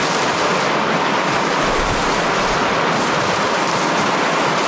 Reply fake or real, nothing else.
real